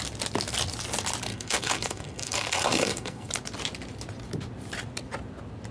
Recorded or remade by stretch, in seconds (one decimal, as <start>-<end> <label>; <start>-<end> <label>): 0.0-1.3 recorded; 1.3-3.3 remade; 3.3-5.7 recorded